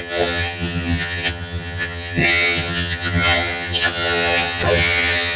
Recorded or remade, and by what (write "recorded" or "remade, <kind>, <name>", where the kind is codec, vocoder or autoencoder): remade, vocoder, HiFi-GAN